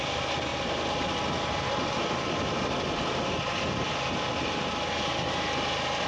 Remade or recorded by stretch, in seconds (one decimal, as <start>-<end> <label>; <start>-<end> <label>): 0.0-6.1 recorded

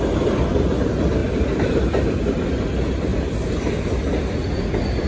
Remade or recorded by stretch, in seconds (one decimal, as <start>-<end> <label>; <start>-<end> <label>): 0.0-5.1 recorded